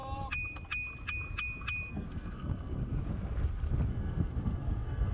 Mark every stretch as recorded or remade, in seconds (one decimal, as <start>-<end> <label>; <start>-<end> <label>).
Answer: 0.0-1.9 recorded; 1.9-2.9 remade; 2.9-3.9 recorded; 3.9-5.1 remade